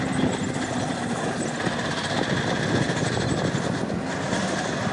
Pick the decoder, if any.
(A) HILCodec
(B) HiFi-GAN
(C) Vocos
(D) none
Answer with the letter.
D